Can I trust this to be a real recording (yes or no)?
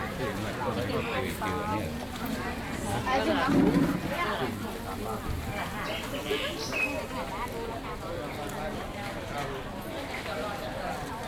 yes